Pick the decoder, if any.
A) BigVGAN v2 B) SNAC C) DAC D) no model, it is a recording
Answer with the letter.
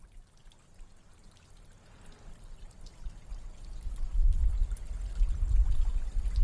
D